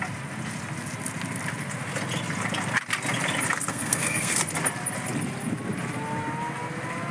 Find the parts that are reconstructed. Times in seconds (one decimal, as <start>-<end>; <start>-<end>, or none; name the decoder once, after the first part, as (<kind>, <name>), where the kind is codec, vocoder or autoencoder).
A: 3.7-4.4 (codec, SNAC)